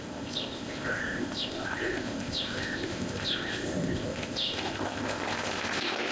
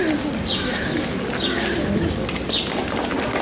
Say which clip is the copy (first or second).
first